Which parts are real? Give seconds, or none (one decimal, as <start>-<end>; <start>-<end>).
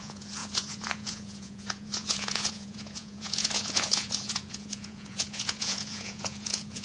none